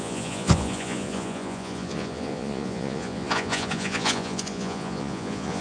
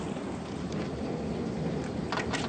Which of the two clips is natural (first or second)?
second